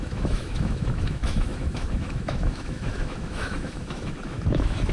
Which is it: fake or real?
fake